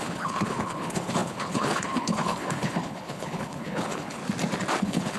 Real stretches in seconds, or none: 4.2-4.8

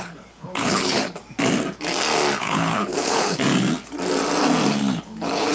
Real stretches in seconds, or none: 1.2-2.4; 3.4-5.0

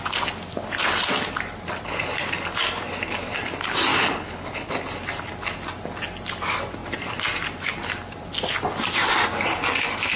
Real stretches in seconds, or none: 0.0-3.9; 4.7-10.2